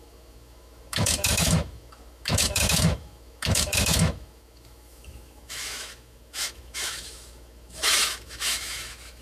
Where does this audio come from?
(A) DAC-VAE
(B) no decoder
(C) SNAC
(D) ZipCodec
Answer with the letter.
A